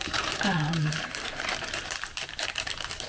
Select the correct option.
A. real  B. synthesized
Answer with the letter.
B